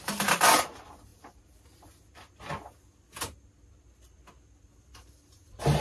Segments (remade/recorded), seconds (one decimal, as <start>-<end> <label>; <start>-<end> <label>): 0.0-5.8 recorded